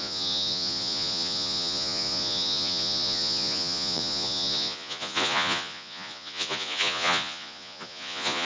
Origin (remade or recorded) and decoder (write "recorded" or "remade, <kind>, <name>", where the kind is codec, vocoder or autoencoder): remade, vocoder, Vocos